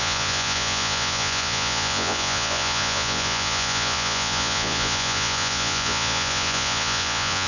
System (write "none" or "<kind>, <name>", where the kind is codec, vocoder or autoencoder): vocoder, Vocos